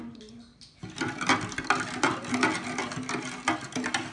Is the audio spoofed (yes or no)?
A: no